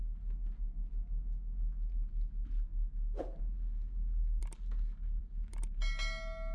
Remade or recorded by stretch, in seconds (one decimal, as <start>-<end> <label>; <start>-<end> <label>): 0.0-6.5 recorded